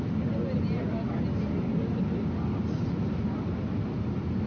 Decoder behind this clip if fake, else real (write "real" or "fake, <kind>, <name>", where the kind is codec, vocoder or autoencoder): real